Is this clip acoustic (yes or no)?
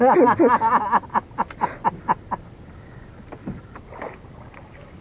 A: yes